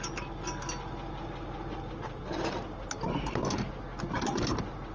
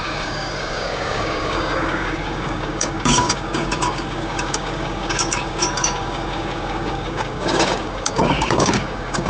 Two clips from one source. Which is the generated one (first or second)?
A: second